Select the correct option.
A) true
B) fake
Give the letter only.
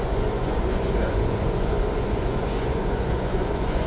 B